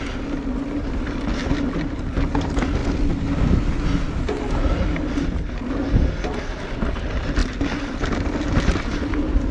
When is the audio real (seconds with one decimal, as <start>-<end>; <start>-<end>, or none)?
0.0-9.5